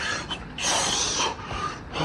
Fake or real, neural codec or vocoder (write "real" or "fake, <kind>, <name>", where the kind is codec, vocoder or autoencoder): real